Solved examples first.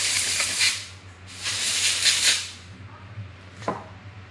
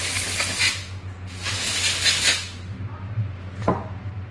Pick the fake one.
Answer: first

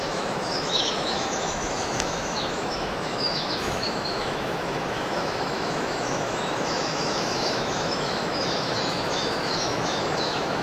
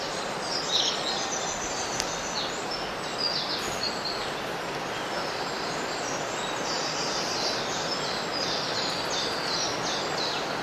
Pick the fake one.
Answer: first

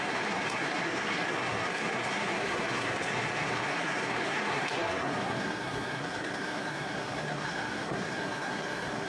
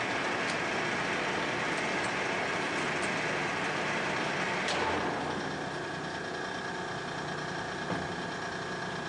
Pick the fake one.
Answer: first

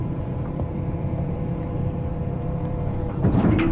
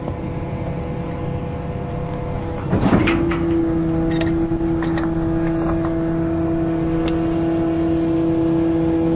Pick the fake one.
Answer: first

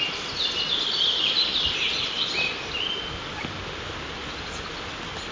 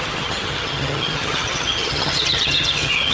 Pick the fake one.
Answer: second